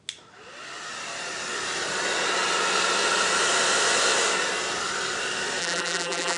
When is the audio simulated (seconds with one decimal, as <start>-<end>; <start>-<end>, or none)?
5.6-6.4